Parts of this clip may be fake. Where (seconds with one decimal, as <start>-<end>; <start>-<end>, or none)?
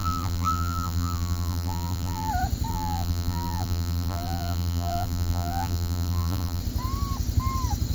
0.0-2.3; 2.7-6.6